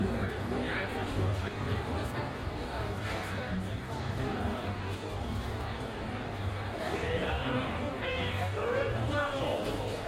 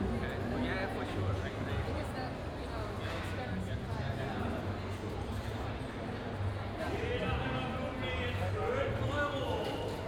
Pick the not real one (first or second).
first